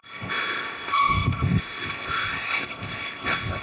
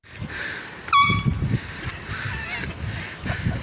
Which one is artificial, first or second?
first